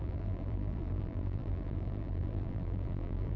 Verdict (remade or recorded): remade